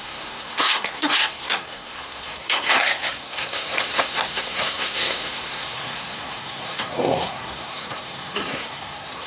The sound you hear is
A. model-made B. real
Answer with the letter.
A